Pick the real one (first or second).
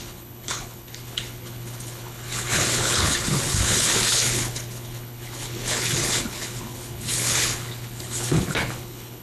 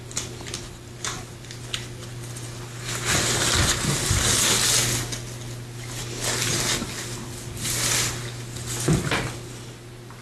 second